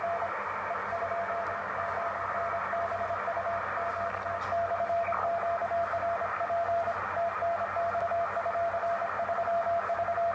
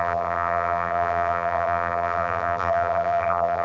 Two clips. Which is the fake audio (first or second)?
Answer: second